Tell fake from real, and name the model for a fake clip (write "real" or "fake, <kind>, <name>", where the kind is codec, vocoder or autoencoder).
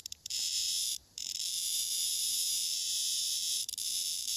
fake, vocoder, BigVGAN v2